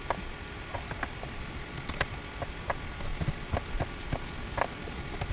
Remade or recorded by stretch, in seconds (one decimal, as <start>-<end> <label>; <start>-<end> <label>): 0.0-5.3 recorded